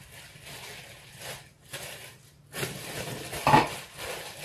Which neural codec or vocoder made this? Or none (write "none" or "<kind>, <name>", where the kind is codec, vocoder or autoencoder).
none